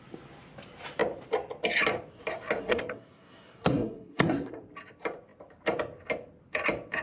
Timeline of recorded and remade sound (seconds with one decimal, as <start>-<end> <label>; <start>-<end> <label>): 0.0-2.6 recorded; 2.6-4.6 remade; 4.6-7.0 recorded